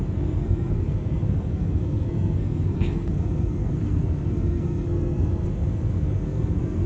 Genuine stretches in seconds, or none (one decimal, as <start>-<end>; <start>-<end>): none